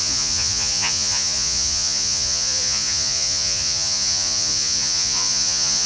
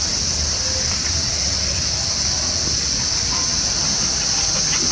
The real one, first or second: second